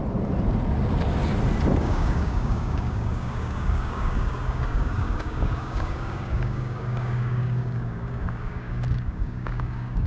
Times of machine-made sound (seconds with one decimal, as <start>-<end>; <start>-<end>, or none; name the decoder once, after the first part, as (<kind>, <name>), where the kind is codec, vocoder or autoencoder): 1.8-10.1 (codec, DAC)

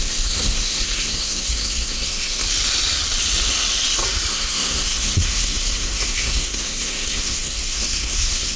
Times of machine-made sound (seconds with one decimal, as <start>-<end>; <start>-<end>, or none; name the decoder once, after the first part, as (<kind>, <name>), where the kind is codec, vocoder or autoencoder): 0.0-2.4 (codec, SNAC); 4.3-8.6

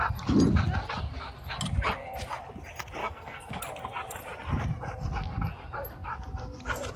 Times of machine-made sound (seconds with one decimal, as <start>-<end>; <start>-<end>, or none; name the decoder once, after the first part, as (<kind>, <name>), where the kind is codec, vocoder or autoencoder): 3.0-3.6 (codec, SNAC)

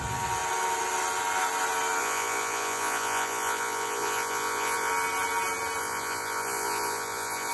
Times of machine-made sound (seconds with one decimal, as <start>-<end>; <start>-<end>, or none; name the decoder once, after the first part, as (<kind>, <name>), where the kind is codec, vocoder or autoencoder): 2.0-4.9 (vocoder, Vocos); 5.8-7.5

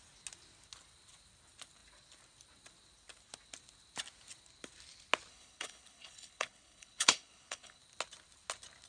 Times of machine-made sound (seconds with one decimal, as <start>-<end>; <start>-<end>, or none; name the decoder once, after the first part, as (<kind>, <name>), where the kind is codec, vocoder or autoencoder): 5.3-7.8 (codec, HILCodec)

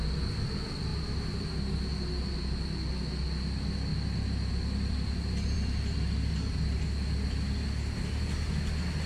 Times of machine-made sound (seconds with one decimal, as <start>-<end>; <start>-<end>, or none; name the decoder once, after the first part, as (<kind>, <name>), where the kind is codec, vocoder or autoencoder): 3.9-6.8 (vocoder, BigVGAN v2)